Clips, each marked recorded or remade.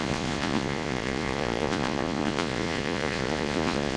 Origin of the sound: remade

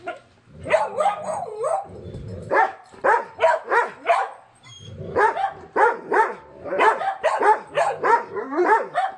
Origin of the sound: remade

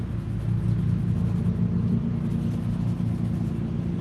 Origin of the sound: recorded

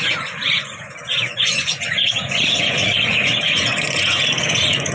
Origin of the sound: remade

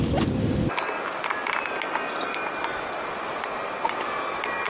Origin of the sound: recorded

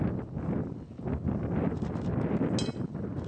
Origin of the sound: recorded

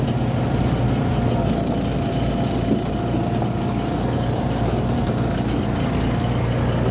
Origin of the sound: recorded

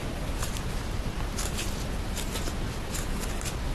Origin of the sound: recorded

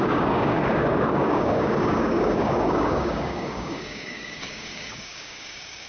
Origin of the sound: remade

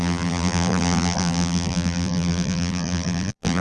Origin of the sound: remade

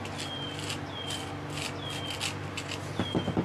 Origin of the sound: recorded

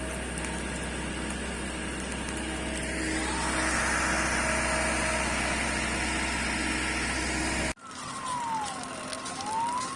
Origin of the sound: recorded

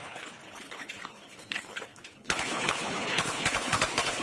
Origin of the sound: remade